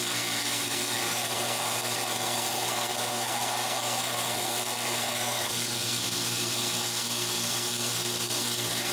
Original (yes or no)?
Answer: no